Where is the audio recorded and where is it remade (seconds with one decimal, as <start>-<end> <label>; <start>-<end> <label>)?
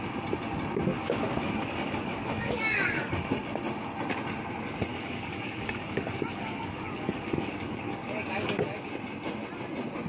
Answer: 0.0-0.9 recorded; 0.9-3.1 remade; 3.1-4.9 recorded; 4.9-8.9 remade; 8.9-10.1 recorded